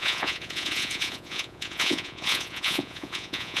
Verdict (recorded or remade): remade